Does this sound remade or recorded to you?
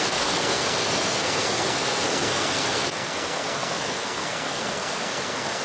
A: remade